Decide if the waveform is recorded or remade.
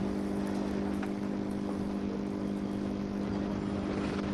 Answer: recorded